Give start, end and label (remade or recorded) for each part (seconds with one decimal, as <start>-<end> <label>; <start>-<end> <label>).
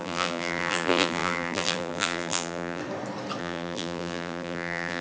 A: 0.0-2.8 remade; 2.8-3.4 recorded; 3.4-5.0 remade